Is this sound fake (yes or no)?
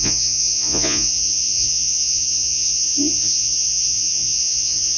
yes